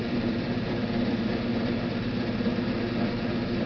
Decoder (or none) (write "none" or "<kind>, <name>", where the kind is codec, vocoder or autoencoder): vocoder, BigVGAN v2